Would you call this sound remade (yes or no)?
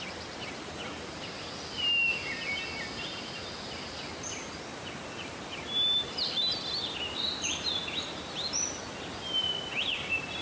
no